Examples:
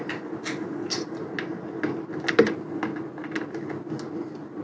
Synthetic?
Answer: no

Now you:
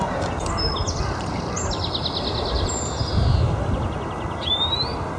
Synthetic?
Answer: no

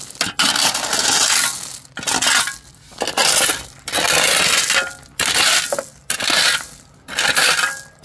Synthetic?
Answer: no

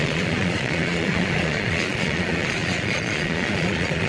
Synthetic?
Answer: yes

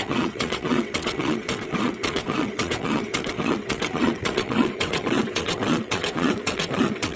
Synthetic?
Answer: yes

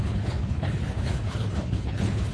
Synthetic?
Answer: yes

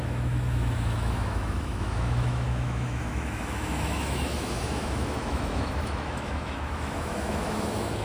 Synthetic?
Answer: yes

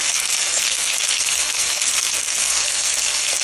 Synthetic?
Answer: yes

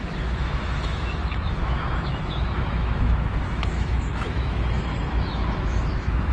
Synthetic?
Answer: yes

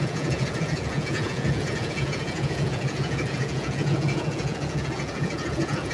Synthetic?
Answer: yes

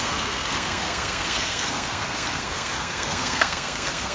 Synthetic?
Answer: yes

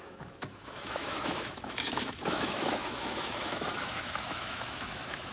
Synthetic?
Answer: yes